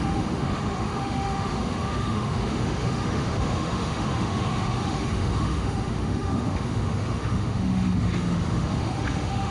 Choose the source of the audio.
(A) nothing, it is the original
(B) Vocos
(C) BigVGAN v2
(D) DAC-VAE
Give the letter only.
D